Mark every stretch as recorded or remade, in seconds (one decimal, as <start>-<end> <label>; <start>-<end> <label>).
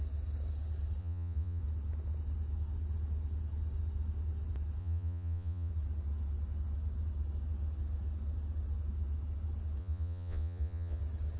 0.0-1.0 recorded; 1.0-1.6 remade; 1.6-4.8 recorded; 4.8-5.7 remade; 5.7-9.8 recorded; 9.8-11.0 remade; 11.0-11.4 recorded